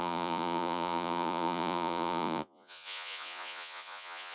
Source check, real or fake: fake